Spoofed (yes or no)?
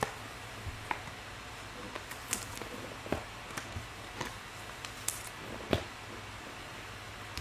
no